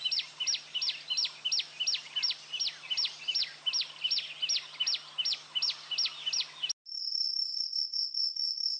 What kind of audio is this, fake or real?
real